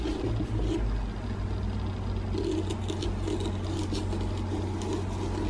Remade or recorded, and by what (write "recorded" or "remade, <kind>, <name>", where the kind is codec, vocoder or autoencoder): recorded